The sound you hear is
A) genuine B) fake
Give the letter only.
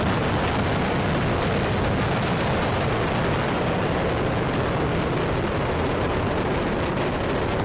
A